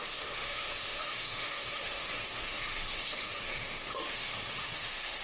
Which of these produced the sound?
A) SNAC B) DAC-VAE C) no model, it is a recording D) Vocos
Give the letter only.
B